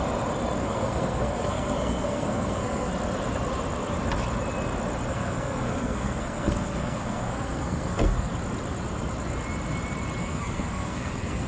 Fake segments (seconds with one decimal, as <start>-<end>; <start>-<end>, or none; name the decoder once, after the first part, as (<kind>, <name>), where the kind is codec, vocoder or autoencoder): 0.6-2.9 (codec, SNAC); 5.1-8.3; 10.2-11.5